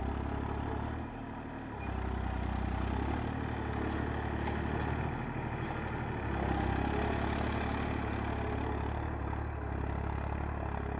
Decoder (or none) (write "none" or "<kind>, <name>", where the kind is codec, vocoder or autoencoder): none